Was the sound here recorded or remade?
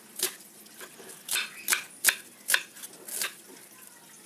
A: recorded